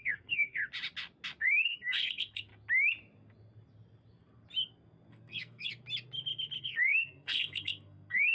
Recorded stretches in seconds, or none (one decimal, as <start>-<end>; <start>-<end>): 0.6-1.4; 2.5-5.1; 5.7-6.6